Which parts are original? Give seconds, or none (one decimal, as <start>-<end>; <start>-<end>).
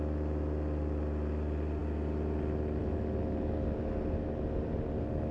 0.0-5.3